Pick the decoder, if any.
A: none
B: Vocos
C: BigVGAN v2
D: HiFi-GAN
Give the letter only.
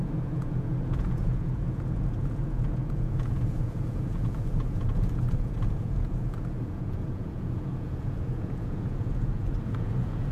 B